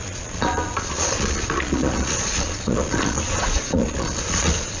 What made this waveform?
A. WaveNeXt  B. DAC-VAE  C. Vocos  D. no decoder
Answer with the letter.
C